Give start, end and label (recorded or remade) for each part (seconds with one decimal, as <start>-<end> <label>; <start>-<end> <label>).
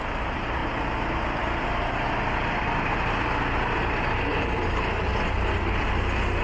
0.0-0.6 remade; 0.6-4.4 recorded; 4.4-5.1 remade; 5.1-5.7 recorded; 5.7-6.4 remade